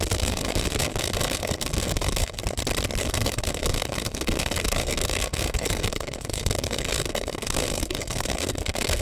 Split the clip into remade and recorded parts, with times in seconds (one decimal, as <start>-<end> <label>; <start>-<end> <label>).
0.0-2.4 remade; 2.4-3.0 recorded; 3.0-9.0 remade